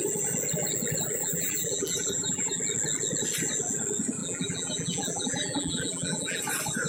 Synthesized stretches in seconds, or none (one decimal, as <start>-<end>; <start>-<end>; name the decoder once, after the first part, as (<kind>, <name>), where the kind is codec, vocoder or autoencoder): 1.2-2.6 (vocoder, BigVGAN v2); 4.2-6.4